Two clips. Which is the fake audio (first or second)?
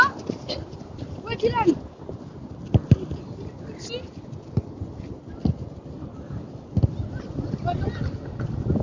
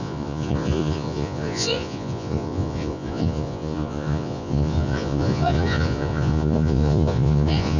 second